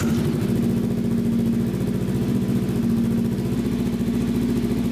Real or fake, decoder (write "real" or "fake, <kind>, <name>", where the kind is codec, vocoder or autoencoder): real